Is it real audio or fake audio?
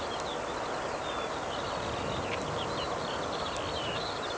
real